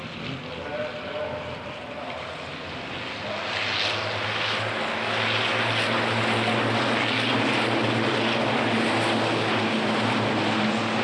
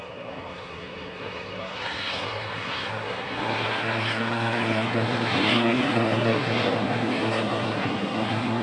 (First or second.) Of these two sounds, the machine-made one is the second